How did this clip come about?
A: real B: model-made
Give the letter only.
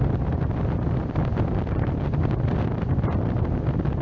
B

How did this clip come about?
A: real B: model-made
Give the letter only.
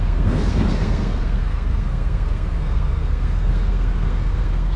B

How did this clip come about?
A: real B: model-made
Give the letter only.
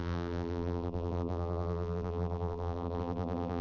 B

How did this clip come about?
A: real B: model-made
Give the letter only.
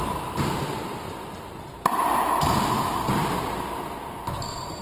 B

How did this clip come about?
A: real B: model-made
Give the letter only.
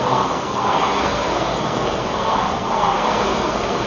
B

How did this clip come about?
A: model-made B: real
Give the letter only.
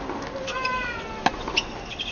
B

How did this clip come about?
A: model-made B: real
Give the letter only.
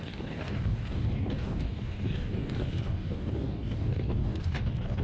A